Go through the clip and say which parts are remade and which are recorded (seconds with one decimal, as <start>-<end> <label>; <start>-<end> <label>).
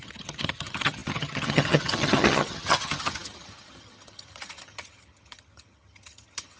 0.0-6.6 remade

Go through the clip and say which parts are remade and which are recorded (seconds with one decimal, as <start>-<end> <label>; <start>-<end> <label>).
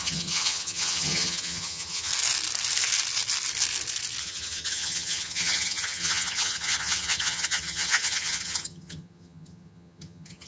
0.0-2.1 remade; 2.1-4.2 recorded; 4.2-10.5 remade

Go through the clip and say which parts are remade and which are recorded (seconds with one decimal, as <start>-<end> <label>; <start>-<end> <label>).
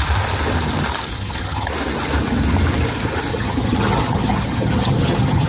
0.0-1.1 recorded; 1.1-1.7 remade; 1.7-3.3 recorded; 3.3-5.5 remade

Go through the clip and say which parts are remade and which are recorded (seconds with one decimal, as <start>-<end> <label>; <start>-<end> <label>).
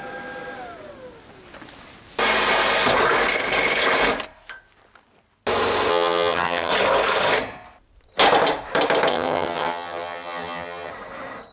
0.0-5.9 recorded; 5.9-6.7 remade; 6.7-9.1 recorded; 9.1-10.9 remade; 10.9-11.5 recorded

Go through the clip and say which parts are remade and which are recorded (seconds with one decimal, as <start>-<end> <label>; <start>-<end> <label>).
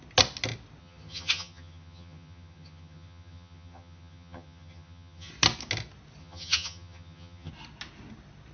0.0-0.8 recorded; 0.8-5.3 remade; 5.3-6.2 recorded; 6.2-7.5 remade; 7.5-8.5 recorded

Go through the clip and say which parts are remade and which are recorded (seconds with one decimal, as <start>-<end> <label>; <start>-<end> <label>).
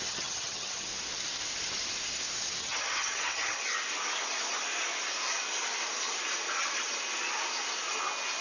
0.0-0.9 remade; 0.9-2.6 recorded; 2.6-3.6 remade; 3.6-8.4 recorded